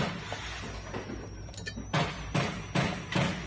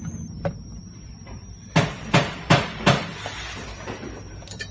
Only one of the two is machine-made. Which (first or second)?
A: second